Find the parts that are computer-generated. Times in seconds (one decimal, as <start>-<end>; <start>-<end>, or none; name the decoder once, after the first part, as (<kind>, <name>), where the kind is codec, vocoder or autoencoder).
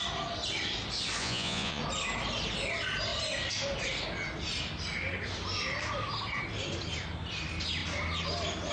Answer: 1.2-1.8 (vocoder, Vocos)